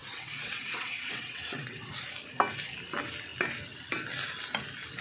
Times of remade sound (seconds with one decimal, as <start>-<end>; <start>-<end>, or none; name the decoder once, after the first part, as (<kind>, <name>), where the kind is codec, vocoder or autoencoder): 0.0-1.9 (vocoder, WaveNeXt)